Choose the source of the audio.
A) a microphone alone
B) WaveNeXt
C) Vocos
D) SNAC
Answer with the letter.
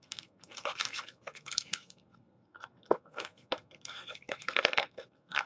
D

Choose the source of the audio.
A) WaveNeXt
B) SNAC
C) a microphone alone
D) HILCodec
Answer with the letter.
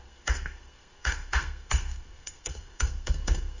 B